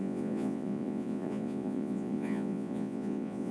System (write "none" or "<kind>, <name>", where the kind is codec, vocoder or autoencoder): vocoder, Vocos